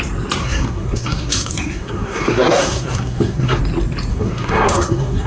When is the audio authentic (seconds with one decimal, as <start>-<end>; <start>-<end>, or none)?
0.0-0.4; 3.6-4.1